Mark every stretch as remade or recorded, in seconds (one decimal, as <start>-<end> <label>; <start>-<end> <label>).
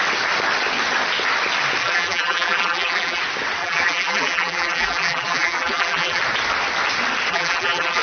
0.0-1.8 recorded; 1.8-3.2 remade; 3.2-3.6 recorded; 3.6-6.2 remade; 6.2-7.3 recorded; 7.3-8.0 remade